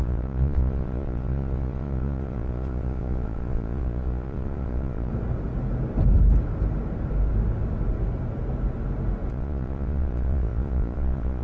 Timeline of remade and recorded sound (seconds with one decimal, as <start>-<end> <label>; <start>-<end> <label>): 0.0-5.1 remade; 5.1-9.3 recorded; 9.3-11.4 remade